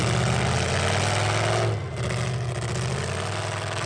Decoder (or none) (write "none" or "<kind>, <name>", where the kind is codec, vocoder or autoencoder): none